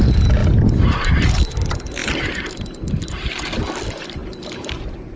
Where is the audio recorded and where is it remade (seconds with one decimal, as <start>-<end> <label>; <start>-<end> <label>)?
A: 0.0-5.2 recorded